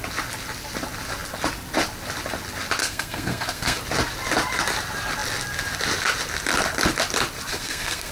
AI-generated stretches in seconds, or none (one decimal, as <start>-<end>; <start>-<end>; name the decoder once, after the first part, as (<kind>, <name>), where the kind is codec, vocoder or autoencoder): 2.8-3.8 (codec, SNAC); 7.5-8.1